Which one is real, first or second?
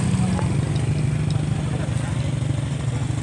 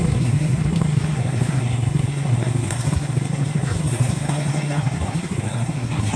first